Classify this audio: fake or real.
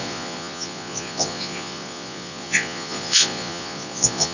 fake